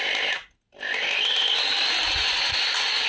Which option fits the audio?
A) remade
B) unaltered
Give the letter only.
B